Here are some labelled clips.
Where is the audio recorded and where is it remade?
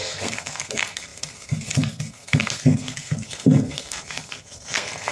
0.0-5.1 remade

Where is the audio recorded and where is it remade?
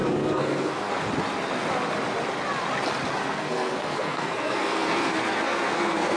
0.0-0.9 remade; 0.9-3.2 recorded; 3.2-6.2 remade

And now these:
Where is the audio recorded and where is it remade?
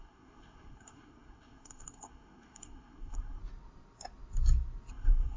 0.0-3.4 remade; 3.4-4.9 recorded; 4.9-5.4 remade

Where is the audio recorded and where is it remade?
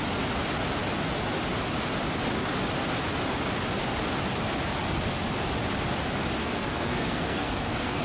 0.0-6.4 recorded; 6.4-8.0 remade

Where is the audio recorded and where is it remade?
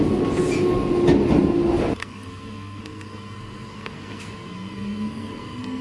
0.0-2.0 recorded; 2.0-5.8 remade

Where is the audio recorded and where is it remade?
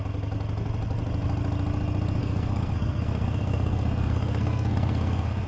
0.0-2.2 recorded; 2.2-5.5 remade